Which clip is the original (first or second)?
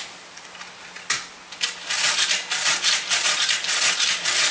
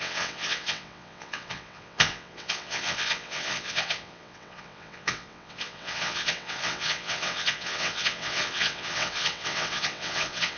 first